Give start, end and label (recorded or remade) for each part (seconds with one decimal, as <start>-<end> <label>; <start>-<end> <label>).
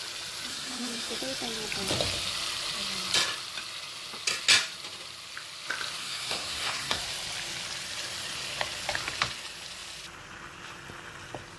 0.0-0.5 recorded; 0.5-1.2 remade; 1.2-6.0 recorded; 6.0-7.0 remade; 7.0-11.6 recorded